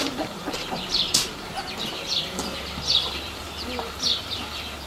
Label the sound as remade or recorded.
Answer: remade